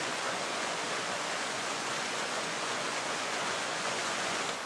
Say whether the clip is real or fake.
fake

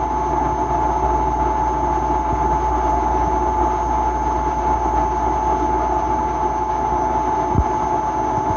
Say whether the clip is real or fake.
real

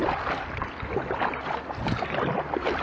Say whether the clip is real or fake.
real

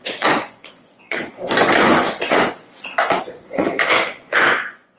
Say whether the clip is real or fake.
fake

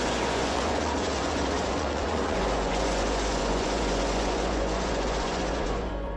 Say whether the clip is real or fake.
fake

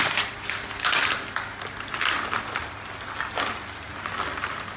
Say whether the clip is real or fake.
real